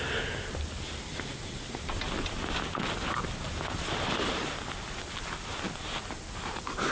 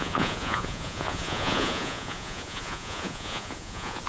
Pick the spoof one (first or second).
second